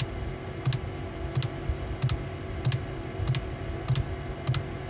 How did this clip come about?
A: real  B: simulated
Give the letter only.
A